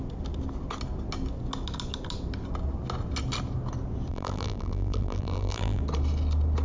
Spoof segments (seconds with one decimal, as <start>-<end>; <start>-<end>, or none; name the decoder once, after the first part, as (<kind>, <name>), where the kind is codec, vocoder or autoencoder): 4.1-5.8 (vocoder, BigVGAN v2)